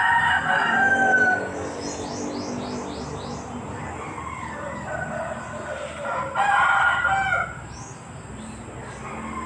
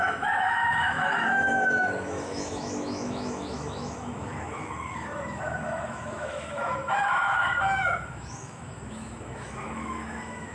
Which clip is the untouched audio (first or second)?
first